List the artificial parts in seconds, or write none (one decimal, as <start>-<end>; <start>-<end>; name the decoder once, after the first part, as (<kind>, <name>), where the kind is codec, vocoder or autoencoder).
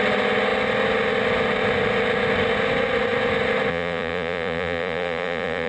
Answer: 3.7-5.7 (vocoder, Vocos)